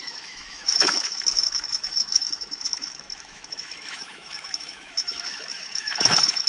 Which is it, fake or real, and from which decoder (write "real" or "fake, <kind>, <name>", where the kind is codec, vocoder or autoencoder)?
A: fake, autoencoder, DAC-VAE